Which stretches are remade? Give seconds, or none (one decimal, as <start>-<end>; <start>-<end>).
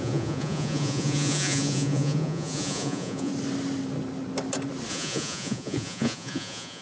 0.0-3.3; 4.9-6.8